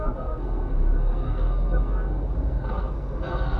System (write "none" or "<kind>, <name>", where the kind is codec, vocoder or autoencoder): codec, SNAC